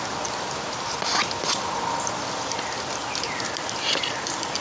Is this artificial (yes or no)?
no